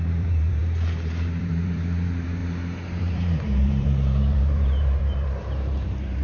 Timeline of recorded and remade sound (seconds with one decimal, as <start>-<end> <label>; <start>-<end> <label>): 0.0-2.4 remade; 2.4-3.0 recorded; 3.0-6.2 remade